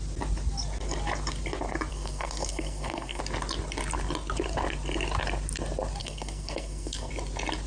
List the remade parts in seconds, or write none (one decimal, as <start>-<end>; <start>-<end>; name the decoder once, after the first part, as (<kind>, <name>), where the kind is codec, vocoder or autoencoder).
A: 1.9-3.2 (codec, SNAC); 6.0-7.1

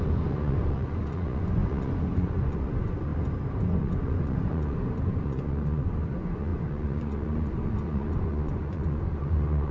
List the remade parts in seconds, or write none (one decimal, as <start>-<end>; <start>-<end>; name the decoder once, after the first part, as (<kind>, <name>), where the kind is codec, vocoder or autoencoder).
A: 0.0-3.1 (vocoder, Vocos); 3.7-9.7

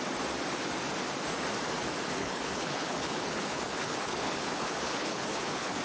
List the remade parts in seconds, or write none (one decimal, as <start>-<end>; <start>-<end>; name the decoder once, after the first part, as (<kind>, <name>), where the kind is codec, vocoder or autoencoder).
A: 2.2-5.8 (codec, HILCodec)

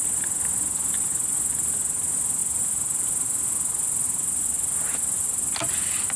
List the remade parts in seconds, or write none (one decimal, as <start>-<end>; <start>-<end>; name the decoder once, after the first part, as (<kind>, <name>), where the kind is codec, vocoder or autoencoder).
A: none

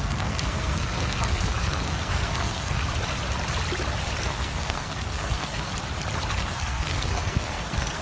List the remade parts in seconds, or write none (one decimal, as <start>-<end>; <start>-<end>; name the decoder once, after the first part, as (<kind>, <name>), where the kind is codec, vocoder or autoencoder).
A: 0.0-2.8 (codec, SNAC); 4.2-5.7; 6.4-8.0

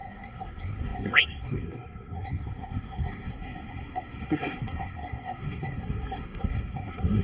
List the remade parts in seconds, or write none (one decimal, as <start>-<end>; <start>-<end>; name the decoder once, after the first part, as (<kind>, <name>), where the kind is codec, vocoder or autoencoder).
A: 0.0-7.2 (codec, SNAC)